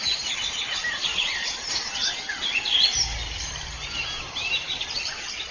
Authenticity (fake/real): fake